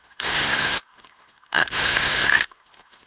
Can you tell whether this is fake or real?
fake